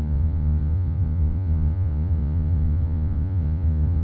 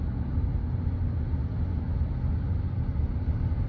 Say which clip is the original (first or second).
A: second